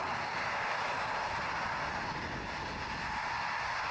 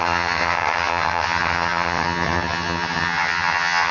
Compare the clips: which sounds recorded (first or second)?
first